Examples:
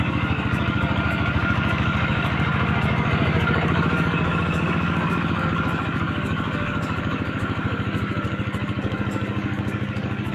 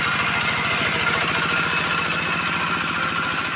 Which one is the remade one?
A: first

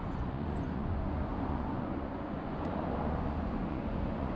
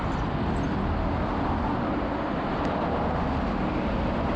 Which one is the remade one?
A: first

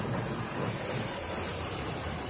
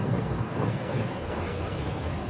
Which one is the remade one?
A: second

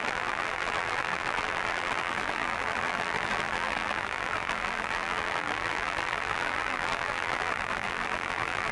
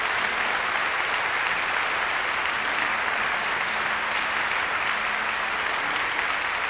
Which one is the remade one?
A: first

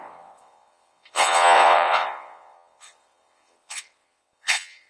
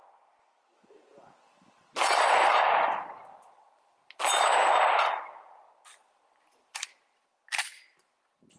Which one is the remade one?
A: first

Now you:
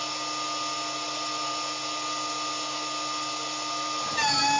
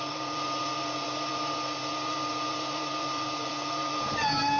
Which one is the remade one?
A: second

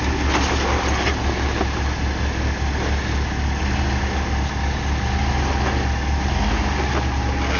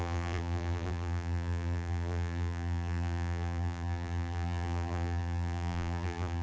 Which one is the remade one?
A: second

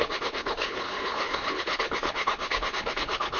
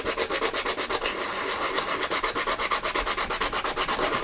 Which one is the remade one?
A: first